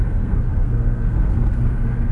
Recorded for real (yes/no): no